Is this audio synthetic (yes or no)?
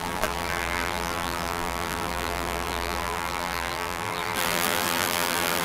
yes